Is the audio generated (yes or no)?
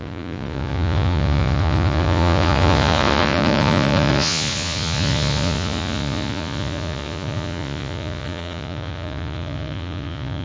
yes